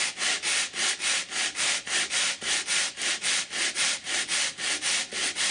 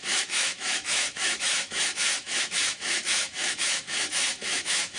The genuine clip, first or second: first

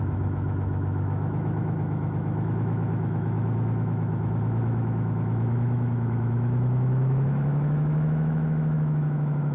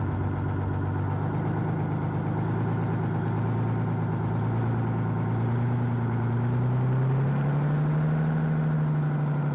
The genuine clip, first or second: second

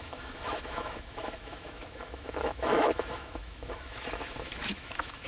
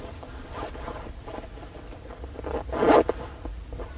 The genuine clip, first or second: second